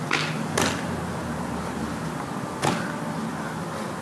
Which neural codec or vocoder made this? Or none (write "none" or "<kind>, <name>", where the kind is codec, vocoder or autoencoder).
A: none